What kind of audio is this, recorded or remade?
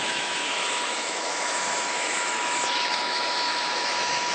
remade